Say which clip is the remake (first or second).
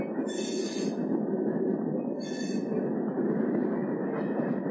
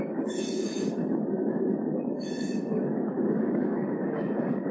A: second